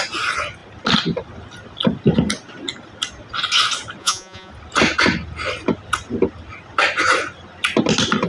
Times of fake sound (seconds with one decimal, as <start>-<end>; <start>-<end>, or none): 4.0-4.5